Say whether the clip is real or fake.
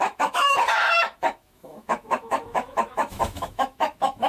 fake